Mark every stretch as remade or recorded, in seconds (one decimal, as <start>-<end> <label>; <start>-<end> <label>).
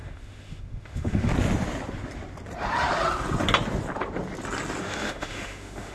0.0-1.3 remade; 1.3-4.8 recorded; 4.8-5.9 remade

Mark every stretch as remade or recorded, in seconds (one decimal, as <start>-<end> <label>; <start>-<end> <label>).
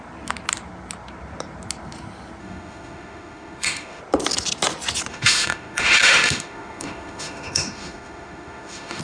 0.0-2.4 recorded; 2.4-4.0 remade; 4.0-5.1 recorded; 5.1-9.0 remade